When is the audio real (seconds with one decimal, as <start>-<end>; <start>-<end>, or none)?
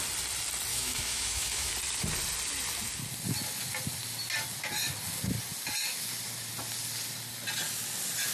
0.0-0.7; 1.7-8.3